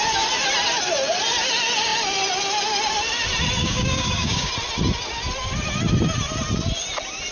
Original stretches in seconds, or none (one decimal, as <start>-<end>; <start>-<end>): 0.0-3.6; 4.5-7.3